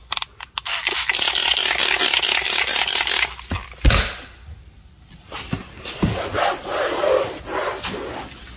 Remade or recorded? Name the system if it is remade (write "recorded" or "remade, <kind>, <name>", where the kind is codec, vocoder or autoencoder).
recorded